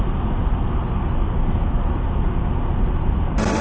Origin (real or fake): real